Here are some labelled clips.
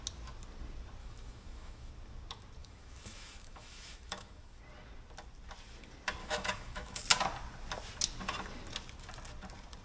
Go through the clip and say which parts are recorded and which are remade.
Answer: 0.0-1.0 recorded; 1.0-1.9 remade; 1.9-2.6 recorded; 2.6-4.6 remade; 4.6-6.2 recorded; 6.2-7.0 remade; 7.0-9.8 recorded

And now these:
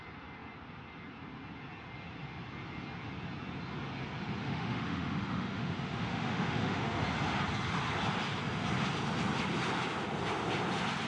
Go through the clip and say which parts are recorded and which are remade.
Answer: 0.0-4.4 recorded; 4.4-7.0 remade; 7.0-11.1 recorded

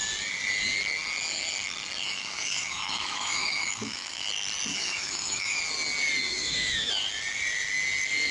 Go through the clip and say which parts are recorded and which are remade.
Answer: 0.0-2.0 recorded; 2.0-4.3 remade; 4.3-4.7 recorded; 4.7-5.6 remade; 5.6-6.3 recorded; 6.3-6.9 remade; 6.9-8.3 recorded

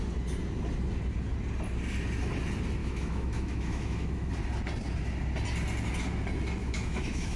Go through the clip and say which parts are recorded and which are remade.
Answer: 0.0-2.8 recorded; 2.8-4.3 remade; 4.3-6.6 recorded; 6.6-7.4 remade

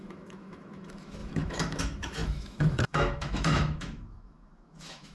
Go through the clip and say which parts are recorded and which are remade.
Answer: 0.0-5.1 remade

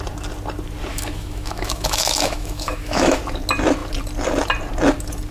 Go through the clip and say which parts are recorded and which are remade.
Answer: 0.0-0.9 recorded; 0.9-3.2 remade; 3.2-5.3 recorded

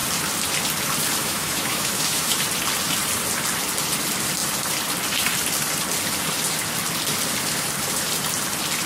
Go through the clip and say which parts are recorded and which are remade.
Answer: 0.0-1.2 recorded; 1.2-2.4 remade; 2.4-8.9 recorded